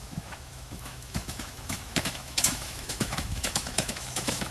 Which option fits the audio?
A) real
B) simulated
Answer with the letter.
B